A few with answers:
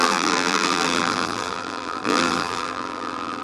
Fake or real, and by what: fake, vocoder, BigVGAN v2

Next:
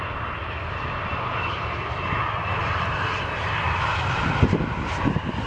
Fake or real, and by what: fake, vocoder, BigVGAN v2